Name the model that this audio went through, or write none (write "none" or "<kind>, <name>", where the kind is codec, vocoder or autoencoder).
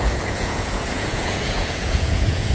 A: vocoder, Vocos